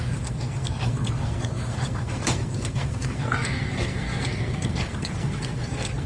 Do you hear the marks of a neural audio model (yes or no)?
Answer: yes